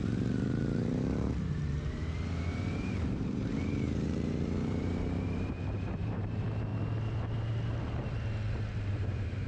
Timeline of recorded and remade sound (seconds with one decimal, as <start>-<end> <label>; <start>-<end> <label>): 0.0-6.7 remade; 6.7-8.6 recorded; 8.6-9.5 remade

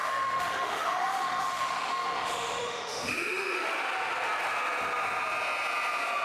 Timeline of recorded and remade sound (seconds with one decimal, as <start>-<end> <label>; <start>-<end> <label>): 0.0-3.7 remade; 3.7-6.2 recorded

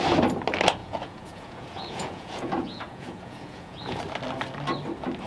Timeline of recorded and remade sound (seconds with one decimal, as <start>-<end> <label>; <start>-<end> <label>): 0.0-0.8 recorded; 0.8-4.0 remade; 4.0-5.3 recorded

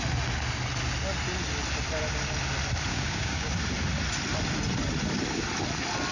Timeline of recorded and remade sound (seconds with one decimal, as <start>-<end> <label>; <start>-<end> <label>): 0.0-2.9 recorded; 2.9-3.5 remade; 3.5-6.1 recorded

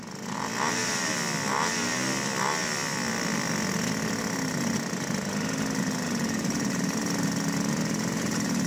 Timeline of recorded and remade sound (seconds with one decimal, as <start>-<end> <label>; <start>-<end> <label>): 0.0-8.7 recorded

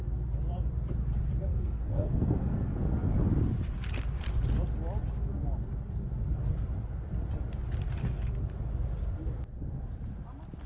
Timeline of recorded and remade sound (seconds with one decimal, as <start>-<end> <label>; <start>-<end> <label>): 0.0-1.5 recorded; 1.5-2.6 remade; 2.6-10.7 recorded

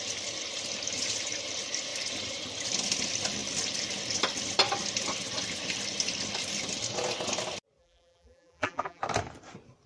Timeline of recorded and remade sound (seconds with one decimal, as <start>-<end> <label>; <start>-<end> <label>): 0.0-7.8 recorded; 7.8-9.0 remade; 9.0-9.9 recorded

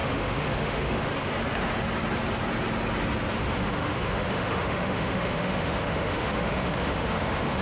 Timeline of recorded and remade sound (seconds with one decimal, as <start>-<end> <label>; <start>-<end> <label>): 0.0-1.1 remade; 1.1-3.4 recorded; 3.4-7.6 remade